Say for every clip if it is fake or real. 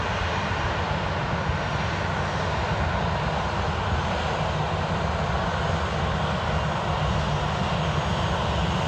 real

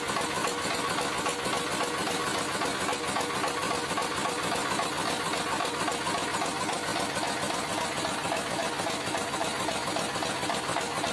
real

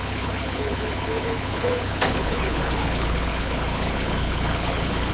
fake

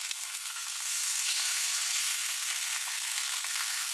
fake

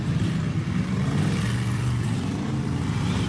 fake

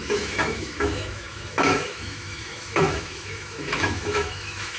fake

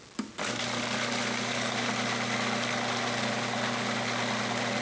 real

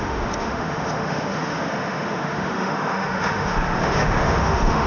fake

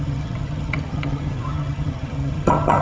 fake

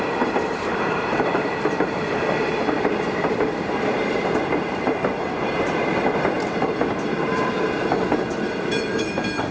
fake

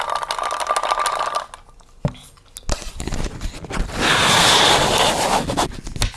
real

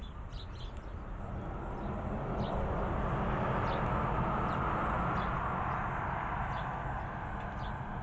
real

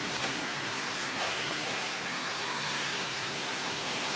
fake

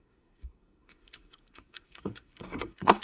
fake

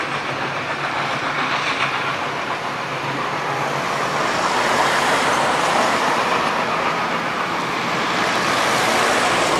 real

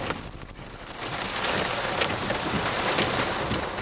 real